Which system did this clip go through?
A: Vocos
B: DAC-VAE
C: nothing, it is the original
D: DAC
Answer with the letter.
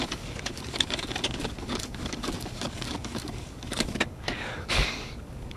D